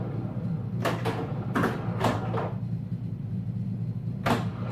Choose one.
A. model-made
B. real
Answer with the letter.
B